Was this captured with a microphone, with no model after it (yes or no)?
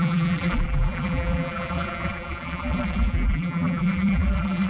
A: no